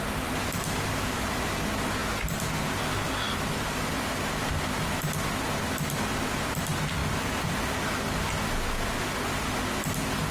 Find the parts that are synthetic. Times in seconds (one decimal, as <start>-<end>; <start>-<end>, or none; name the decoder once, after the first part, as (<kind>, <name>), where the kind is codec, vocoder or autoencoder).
none